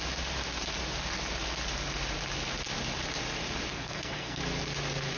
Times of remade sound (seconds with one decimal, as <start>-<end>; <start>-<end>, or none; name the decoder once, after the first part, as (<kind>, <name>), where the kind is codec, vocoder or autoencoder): 3.7-4.4 (codec, SNAC)